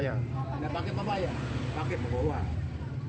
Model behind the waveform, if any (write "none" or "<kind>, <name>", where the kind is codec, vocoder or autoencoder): vocoder, BigVGAN v2